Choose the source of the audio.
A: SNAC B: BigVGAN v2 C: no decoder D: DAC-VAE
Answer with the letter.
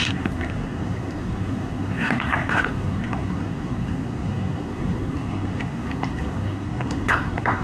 A